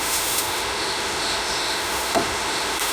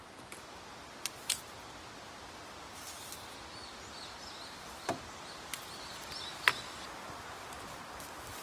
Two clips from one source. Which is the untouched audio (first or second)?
second